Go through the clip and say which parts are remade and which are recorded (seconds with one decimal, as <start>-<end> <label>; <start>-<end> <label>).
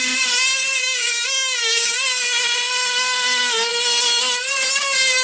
0.0-0.8 recorded; 0.8-2.0 remade; 2.0-5.2 recorded